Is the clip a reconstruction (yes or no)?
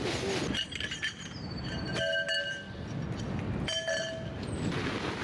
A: no